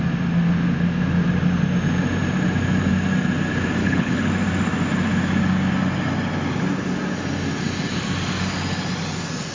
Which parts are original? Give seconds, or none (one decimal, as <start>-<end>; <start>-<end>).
0.0-3.8; 4.3-9.5